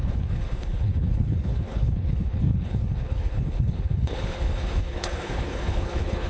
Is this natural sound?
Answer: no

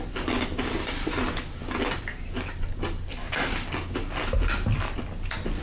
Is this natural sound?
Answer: yes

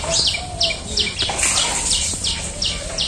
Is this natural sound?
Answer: yes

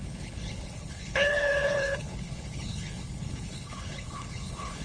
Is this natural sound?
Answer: no